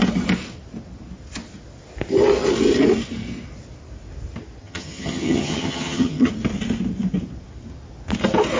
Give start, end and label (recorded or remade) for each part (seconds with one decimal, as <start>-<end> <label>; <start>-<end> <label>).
0.0-4.6 recorded; 4.6-6.3 remade; 6.3-8.6 recorded